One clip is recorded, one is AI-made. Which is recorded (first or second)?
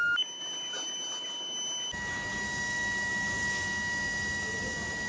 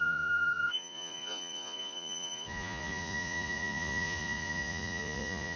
first